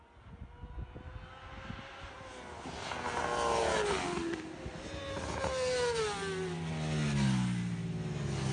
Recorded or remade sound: recorded